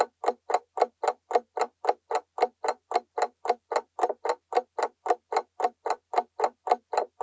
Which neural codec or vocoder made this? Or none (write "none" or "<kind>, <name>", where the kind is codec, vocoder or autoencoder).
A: none